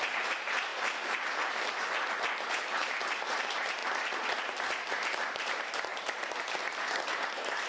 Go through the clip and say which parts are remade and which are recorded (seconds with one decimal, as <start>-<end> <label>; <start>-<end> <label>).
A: 0.0-0.7 remade; 0.7-2.5 recorded; 2.5-3.8 remade; 3.8-4.4 recorded; 4.4-5.9 remade; 5.9-6.6 recorded; 6.6-7.7 remade